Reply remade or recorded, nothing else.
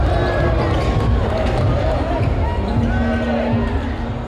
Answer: recorded